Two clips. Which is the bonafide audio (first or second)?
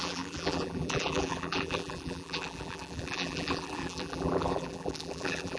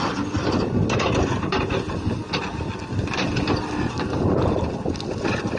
second